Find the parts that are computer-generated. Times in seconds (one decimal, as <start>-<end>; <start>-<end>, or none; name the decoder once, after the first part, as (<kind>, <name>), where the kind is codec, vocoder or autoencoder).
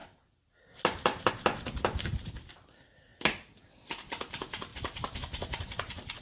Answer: 0.0-1.3 (vocoder, BigVGAN v2); 3.1-3.7; 4.7-6.2